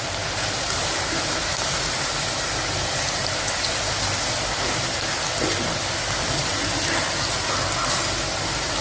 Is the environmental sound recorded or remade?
recorded